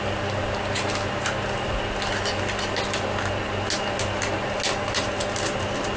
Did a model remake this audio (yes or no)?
no